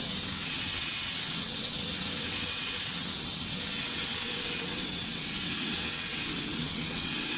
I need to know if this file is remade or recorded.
remade